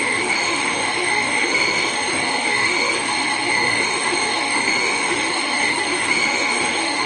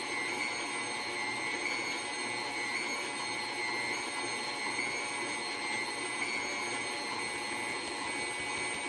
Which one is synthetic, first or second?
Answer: first